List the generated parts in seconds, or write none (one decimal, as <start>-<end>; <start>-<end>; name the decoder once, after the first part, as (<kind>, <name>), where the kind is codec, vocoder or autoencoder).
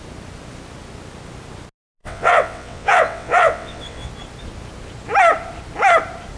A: 2.0-4.1 (vocoder, WaveNeXt)